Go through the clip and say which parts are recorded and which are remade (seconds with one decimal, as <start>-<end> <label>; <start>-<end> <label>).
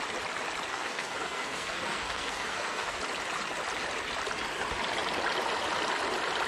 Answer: 0.0-0.7 recorded; 0.7-3.0 remade; 3.0-6.5 recorded